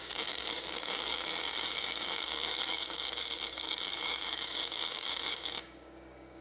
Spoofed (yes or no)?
yes